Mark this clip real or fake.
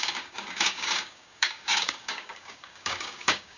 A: fake